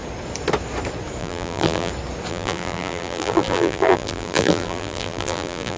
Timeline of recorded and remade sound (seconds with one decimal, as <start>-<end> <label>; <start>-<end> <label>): 0.0-1.2 recorded; 1.2-1.9 remade; 1.9-2.3 recorded; 2.3-5.8 remade